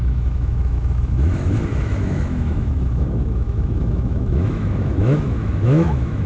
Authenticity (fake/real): fake